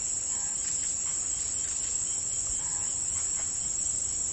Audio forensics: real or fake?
real